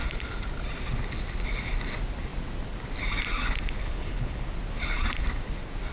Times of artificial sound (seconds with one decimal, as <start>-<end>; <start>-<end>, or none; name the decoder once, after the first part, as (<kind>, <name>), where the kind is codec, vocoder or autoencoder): 3.8-4.4 (codec, HILCodec)